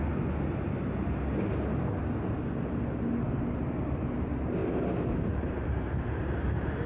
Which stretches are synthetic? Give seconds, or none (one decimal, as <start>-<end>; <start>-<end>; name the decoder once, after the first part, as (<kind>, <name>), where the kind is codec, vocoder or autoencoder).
4.1-4.6 (vocoder, BigVGAN v2); 5.1-6.9